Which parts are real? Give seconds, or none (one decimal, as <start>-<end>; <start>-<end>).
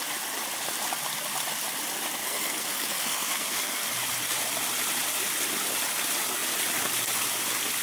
0.0-2.2; 3.9-7.8